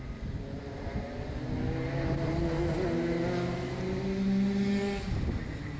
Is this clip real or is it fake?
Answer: real